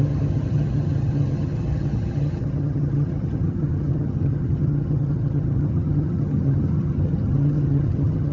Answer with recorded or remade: remade